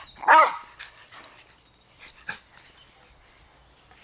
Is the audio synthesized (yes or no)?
no